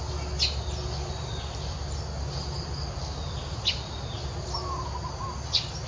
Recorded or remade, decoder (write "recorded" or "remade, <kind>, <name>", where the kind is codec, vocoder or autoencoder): recorded